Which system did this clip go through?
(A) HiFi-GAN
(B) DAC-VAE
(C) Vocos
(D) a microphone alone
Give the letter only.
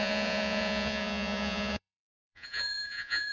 C